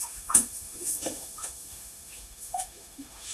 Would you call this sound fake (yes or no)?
yes